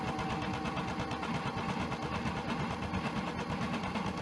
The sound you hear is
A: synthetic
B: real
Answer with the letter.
B